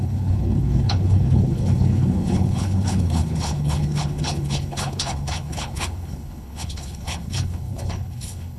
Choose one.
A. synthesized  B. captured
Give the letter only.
A